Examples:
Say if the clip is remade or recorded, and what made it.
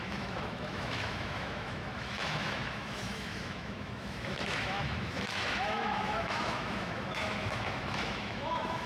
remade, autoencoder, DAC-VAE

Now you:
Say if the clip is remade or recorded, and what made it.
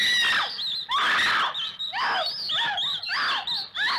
recorded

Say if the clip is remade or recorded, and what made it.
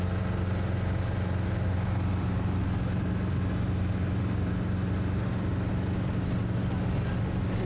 recorded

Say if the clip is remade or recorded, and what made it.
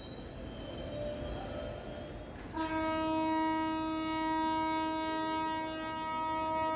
recorded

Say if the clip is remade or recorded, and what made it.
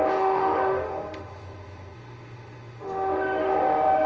remade, autoencoder, DAC-VAE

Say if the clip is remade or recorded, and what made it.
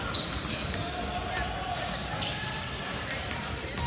recorded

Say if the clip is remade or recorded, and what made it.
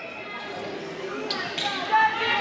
recorded